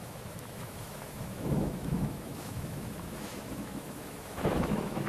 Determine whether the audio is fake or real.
fake